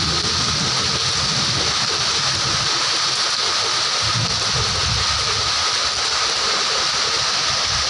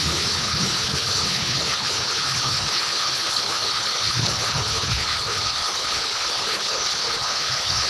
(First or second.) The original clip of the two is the first